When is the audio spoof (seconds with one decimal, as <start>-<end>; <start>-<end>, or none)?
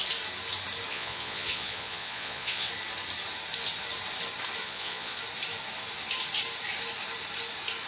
0.9-2.7; 4.6-5.2